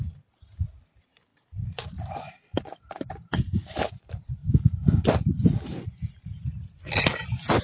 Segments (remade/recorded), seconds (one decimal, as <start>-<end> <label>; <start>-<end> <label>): 0.0-4.4 remade; 4.4-7.6 recorded